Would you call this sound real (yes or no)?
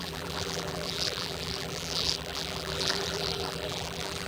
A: no